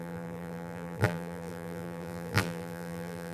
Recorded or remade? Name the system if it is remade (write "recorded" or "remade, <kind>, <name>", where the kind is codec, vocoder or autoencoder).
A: remade, vocoder, BigVGAN v2